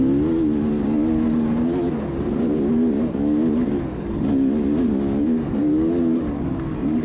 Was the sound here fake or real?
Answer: real